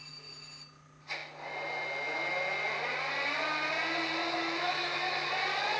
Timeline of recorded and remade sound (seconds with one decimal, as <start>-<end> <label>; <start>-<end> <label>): 0.0-4.2 recorded; 4.2-5.3 remade; 5.3-5.8 recorded